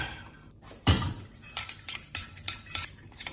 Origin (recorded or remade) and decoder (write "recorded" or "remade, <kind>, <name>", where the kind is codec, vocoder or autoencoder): remade, vocoder, BigVGAN v2